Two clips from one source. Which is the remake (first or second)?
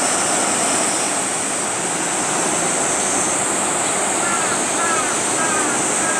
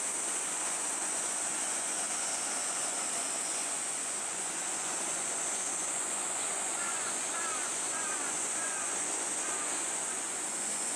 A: second